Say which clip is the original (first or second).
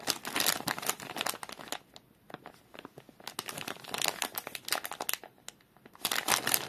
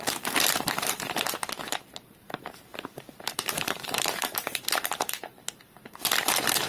first